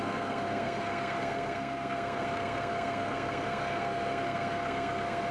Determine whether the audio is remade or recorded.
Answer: remade